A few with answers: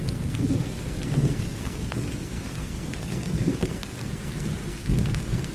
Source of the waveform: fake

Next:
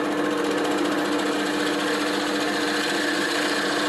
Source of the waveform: real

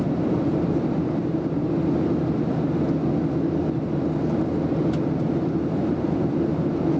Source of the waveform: real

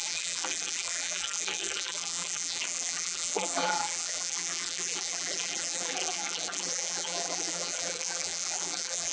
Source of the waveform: fake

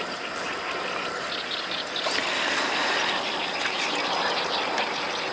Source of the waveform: real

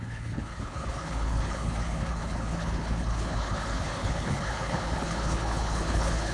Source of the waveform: fake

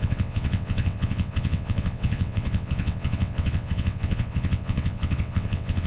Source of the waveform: fake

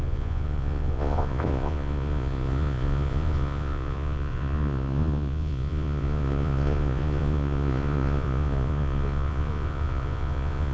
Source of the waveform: fake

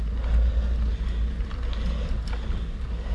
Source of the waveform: real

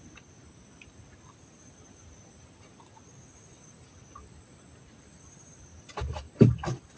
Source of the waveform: real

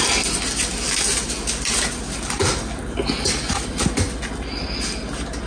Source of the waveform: real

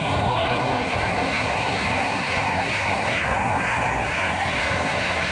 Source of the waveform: fake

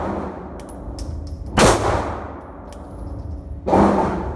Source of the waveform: real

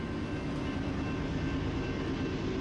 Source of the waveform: real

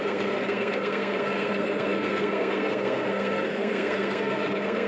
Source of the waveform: fake